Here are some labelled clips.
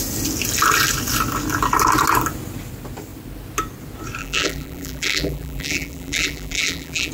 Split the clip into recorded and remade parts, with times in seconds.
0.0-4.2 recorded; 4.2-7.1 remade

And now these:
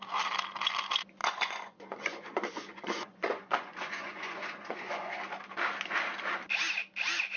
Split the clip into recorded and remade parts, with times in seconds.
0.0-1.2 recorded; 1.2-5.2 remade; 5.2-7.4 recorded

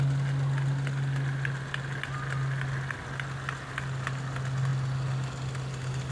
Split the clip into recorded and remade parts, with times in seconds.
0.0-6.1 recorded